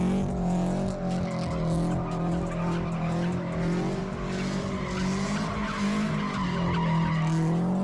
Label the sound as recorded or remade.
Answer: recorded